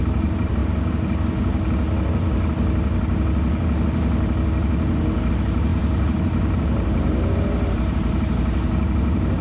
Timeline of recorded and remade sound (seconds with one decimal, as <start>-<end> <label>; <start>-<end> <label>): 0.0-0.6 remade; 0.6-5.3 recorded; 5.3-9.4 remade